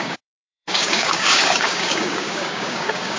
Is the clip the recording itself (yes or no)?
no